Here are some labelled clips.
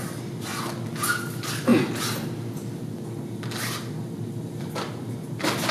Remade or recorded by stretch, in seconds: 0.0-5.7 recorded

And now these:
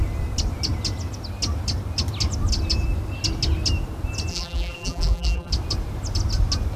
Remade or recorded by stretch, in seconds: 0.0-4.3 recorded; 4.3-5.5 remade; 5.5-6.8 recorded

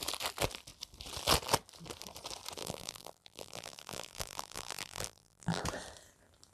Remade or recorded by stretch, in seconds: 0.0-2.6 recorded; 2.6-5.6 remade; 5.6-6.5 recorded

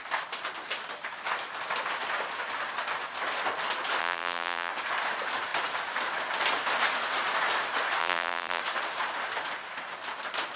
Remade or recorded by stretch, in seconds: 0.0-4.0 recorded; 4.0-4.7 remade; 4.7-8.0 recorded; 8.0-8.6 remade; 8.6-10.6 recorded

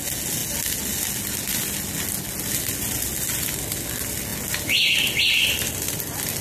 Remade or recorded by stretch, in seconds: 0.0-6.4 recorded

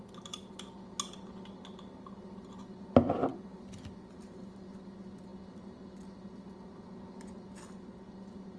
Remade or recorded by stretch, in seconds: 0.0-8.6 recorded

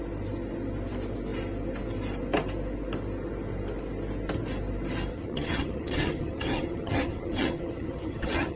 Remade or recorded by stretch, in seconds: 0.0-5.1 recorded; 5.1-8.6 remade

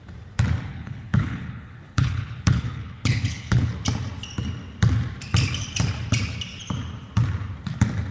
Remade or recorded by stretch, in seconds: 0.0-0.7 recorded; 0.7-3.7 remade; 3.7-8.1 recorded